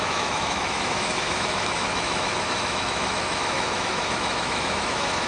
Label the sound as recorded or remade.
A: remade